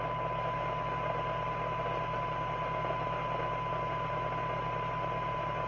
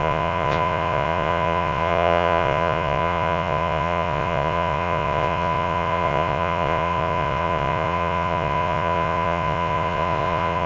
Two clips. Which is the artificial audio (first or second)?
second